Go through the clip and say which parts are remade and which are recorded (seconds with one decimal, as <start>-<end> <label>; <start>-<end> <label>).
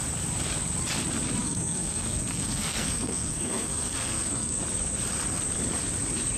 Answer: 0.0-1.4 recorded; 1.4-4.6 remade; 4.6-6.4 recorded